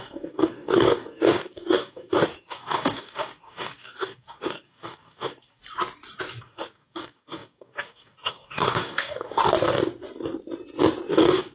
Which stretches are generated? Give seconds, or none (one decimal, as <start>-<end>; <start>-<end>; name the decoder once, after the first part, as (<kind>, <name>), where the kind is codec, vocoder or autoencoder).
0.0-5.6 (codec, DAC); 6.4-9.4; 11.1-11.5